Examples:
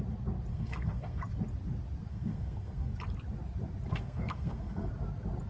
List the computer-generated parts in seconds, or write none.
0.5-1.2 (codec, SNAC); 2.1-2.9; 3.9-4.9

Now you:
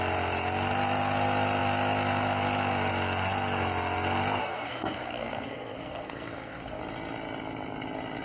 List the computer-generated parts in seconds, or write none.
4.4-6.8 (codec, SNAC)

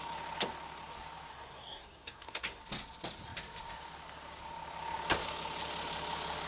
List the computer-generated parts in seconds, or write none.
1.3-2.6 (codec, SNAC)

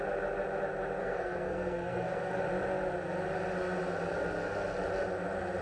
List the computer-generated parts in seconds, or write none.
1.0-2.4 (codec, SNAC)

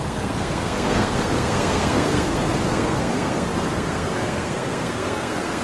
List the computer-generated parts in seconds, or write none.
0.0-5.6 (codec, SNAC)

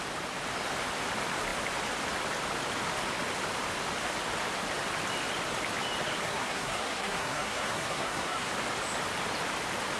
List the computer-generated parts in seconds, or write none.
6.2-8.5 (codec, SNAC)